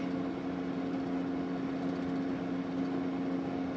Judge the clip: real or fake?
real